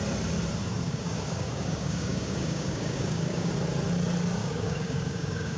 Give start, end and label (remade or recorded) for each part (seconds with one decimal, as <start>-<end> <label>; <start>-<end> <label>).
0.0-0.7 recorded; 0.7-3.5 remade; 3.5-4.4 recorded; 4.4-5.6 remade